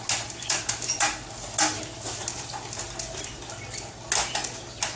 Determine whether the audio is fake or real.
real